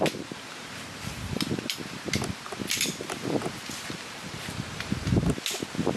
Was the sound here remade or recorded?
recorded